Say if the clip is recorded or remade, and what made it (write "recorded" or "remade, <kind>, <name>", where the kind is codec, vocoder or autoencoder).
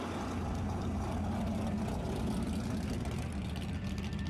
recorded